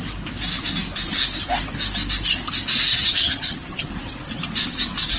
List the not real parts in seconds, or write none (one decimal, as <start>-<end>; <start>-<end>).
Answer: 2.9-3.9

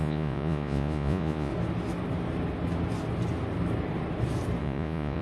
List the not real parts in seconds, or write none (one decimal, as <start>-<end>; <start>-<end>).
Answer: 0.0-1.5; 4.6-5.2